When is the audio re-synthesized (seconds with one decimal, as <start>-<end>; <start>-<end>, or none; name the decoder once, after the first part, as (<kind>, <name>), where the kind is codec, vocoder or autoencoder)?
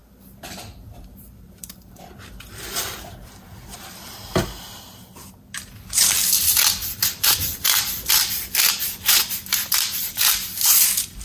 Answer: 0.0-4.4 (vocoder, BigVGAN v2); 5.7-11.2